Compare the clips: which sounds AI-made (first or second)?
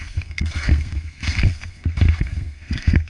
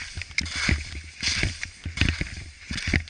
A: first